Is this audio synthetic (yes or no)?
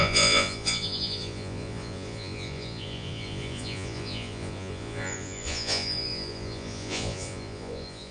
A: yes